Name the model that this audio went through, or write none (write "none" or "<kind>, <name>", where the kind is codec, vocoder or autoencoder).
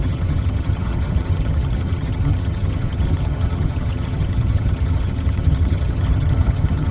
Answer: vocoder, HiFi-GAN